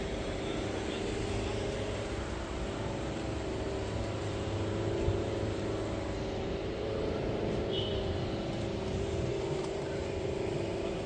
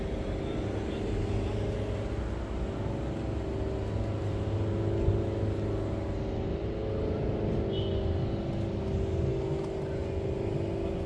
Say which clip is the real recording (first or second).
second